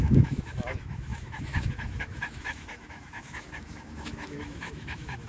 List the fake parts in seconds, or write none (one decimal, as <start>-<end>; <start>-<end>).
0.0-5.3